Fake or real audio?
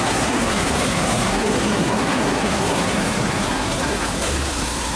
fake